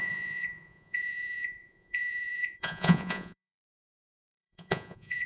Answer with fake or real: fake